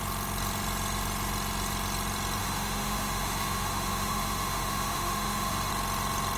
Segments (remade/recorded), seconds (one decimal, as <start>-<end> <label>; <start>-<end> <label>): 0.0-2.4 recorded; 2.4-5.7 remade; 5.7-6.4 recorded